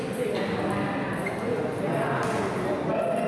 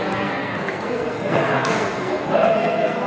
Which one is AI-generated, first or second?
second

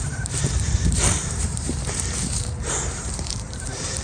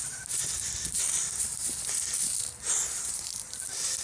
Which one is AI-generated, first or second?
first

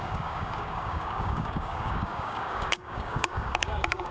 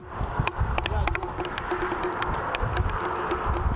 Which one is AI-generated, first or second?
first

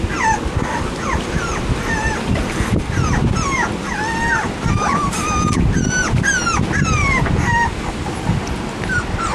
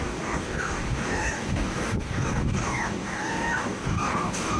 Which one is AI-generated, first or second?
second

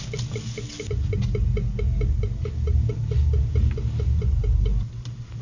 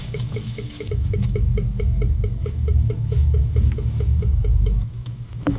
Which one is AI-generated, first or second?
second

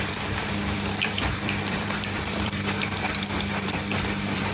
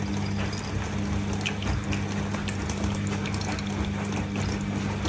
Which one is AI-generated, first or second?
first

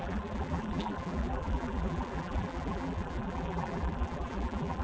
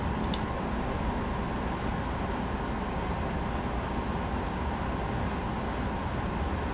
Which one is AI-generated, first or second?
first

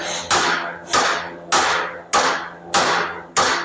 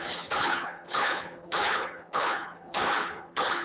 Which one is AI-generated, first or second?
second